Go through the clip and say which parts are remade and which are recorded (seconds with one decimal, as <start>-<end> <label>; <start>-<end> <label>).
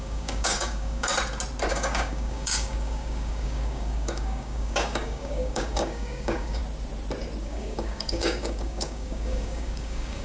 0.0-1.1 remade; 1.1-1.7 recorded; 1.7-6.6 remade; 6.6-7.4 recorded; 7.4-10.2 remade